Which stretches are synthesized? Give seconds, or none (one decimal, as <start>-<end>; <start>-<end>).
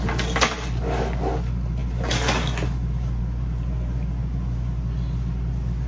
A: none